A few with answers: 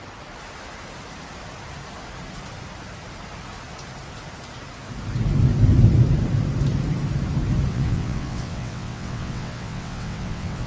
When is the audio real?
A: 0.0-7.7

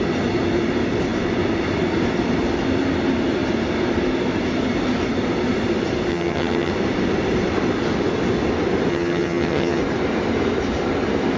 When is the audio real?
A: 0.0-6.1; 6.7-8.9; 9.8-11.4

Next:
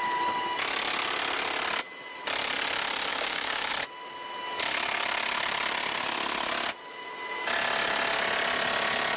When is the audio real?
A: 0.0-3.1; 3.7-9.2